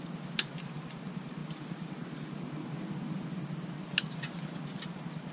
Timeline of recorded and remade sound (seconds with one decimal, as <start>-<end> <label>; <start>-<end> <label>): 0.0-5.3 recorded